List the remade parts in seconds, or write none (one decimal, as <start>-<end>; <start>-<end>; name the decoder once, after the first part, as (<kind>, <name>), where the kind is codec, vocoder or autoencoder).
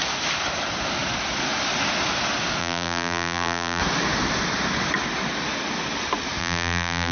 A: 2.6-3.8 (vocoder, BigVGAN v2); 6.4-7.1